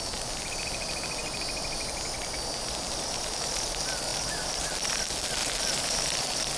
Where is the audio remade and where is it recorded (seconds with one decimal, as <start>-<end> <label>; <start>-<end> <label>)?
0.0-4.1 recorded; 4.1-4.7 remade; 4.7-5.4 recorded; 5.4-6.1 remade; 6.1-6.6 recorded